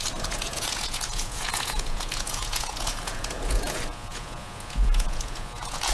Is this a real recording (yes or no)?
no